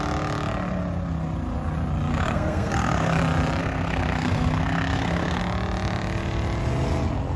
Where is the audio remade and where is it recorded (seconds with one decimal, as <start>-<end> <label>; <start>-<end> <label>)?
0.0-2.1 recorded; 2.1-3.2 remade; 3.2-3.6 recorded; 3.6-5.4 remade; 5.4-7.4 recorded